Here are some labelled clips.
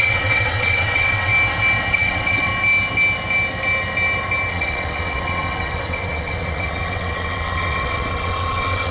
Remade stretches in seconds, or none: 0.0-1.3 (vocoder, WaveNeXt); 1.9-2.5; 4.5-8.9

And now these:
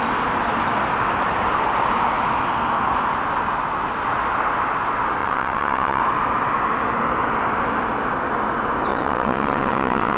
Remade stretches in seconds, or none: 5.2-6.0 (vocoder, WaveNeXt); 8.9-10.2

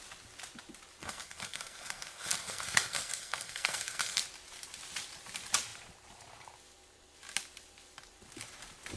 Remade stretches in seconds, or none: 1.0-4.2 (codec, SNAC)

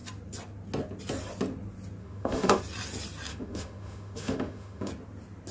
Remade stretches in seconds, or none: 2.0-2.6 (autoencoder, DAC-VAE); 3.3-4.9

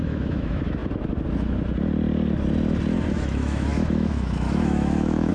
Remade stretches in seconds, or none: 0.0-0.8 (autoencoder, DAC-VAE); 3.1-5.3

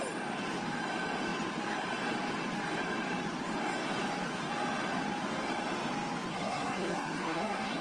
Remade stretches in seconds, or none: 6.3-7.8 (codec, SNAC)